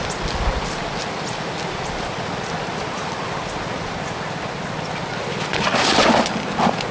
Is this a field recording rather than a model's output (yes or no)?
yes